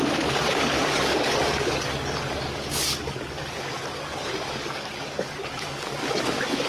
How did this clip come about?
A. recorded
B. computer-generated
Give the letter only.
B